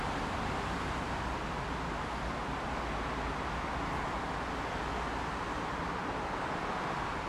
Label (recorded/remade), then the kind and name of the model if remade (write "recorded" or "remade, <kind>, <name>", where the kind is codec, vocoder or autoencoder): recorded